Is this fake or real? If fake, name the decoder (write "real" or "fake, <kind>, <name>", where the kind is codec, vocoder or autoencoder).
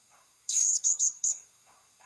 fake, codec, SNAC